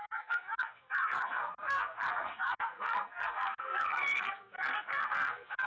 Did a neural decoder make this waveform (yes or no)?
yes